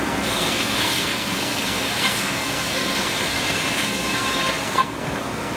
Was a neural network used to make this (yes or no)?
yes